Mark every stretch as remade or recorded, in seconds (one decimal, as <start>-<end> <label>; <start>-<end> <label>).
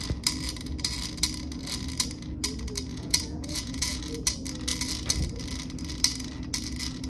0.0-2.9 recorded; 2.9-4.0 remade; 4.0-7.1 recorded